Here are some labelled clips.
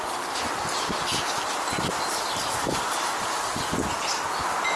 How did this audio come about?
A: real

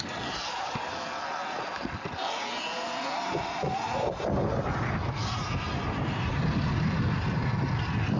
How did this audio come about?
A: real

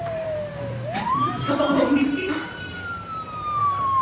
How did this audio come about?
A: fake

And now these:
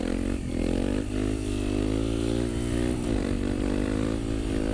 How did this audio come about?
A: fake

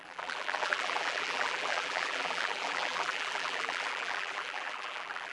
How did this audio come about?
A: fake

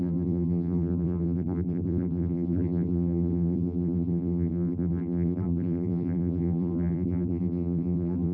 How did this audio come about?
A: fake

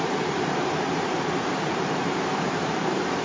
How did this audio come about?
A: fake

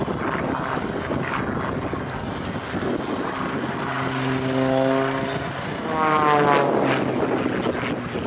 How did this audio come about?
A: real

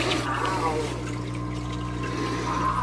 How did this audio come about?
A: fake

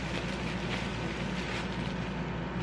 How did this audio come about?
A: real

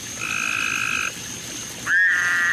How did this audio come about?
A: real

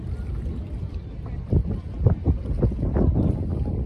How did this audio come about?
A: real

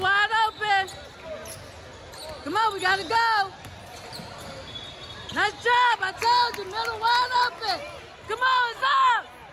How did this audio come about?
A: real